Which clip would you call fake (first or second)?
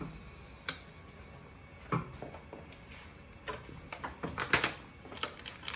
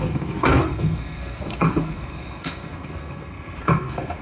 second